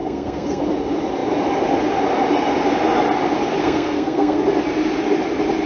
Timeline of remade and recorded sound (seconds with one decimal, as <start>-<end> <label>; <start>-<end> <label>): 0.0-0.6 remade; 0.6-3.6 recorded; 3.6-4.4 remade; 4.4-5.7 recorded